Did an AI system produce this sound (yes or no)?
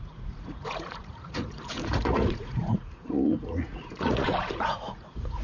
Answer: yes